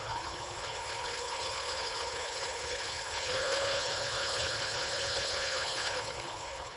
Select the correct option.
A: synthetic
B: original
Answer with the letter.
A